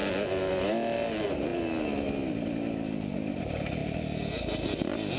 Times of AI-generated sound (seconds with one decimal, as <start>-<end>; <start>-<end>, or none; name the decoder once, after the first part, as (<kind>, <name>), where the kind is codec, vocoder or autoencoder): none